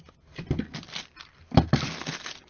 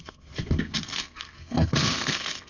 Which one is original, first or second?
first